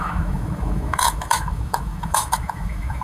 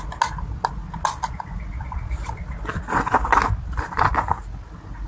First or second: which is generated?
first